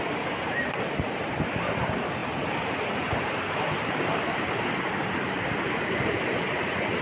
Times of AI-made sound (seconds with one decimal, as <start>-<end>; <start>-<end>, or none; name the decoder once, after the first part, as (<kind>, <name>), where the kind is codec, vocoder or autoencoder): 2.2-5.7 (vocoder, BigVGAN v2)